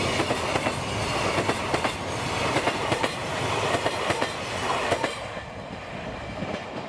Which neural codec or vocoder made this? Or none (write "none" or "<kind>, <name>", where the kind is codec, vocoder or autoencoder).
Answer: none